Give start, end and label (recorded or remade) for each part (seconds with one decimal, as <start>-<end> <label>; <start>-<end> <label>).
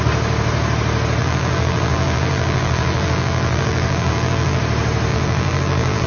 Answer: 0.0-1.2 recorded; 1.2-4.6 remade; 4.6-5.1 recorded; 5.1-6.1 remade